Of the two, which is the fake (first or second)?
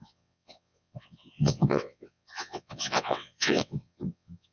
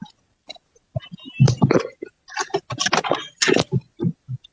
first